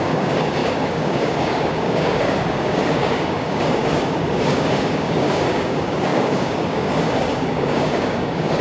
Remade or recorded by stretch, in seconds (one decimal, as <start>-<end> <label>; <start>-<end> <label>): 0.0-8.6 remade